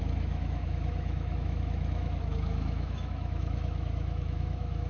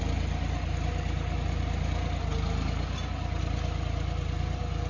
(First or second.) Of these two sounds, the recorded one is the second